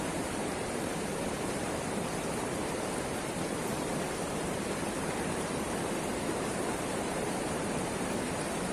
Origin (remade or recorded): remade